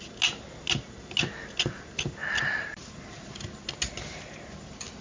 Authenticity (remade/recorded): recorded